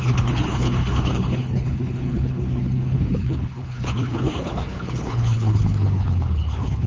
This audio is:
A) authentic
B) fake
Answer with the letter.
B